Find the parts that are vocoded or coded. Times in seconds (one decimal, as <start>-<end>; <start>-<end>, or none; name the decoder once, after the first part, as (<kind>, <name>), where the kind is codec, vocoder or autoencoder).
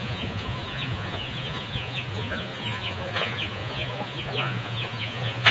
0.0-5.5 (vocoder, Vocos)